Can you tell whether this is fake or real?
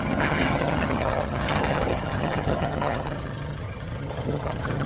fake